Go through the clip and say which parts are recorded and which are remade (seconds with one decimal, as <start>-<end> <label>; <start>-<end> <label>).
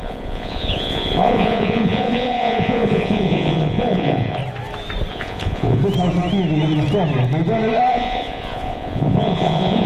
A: 0.0-4.4 remade; 4.4-5.1 recorded; 5.1-5.8 remade; 5.8-7.9 recorded; 7.9-9.9 remade